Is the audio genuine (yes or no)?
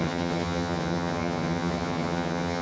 no